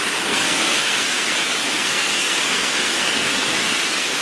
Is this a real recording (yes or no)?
no